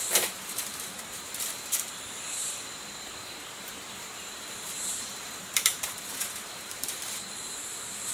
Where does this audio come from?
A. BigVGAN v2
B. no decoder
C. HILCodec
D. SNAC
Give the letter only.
A